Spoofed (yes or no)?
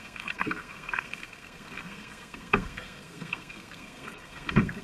yes